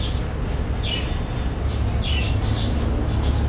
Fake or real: real